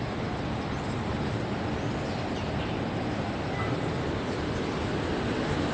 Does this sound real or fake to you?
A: real